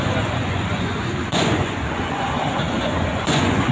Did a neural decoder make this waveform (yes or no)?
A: yes